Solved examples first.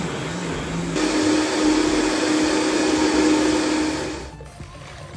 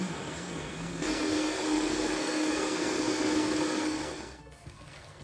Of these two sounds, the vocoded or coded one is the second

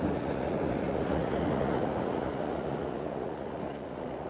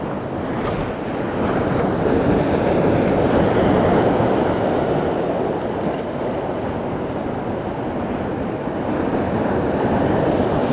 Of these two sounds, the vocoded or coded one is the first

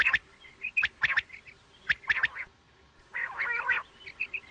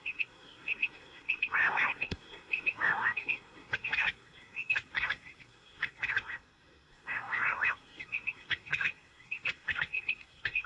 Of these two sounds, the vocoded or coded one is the second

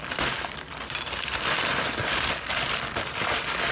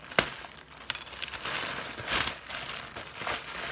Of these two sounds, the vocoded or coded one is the first